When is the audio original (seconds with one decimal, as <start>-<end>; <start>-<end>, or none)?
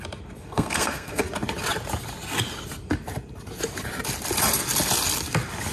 0.0-0.4; 1.2-5.7